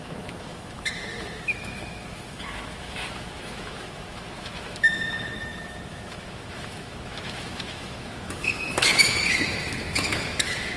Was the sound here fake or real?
fake